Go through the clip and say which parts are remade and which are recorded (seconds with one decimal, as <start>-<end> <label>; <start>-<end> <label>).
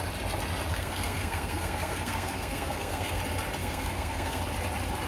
0.0-0.7 recorded; 0.7-3.2 remade; 3.2-3.6 recorded; 3.6-4.4 remade; 4.4-5.1 recorded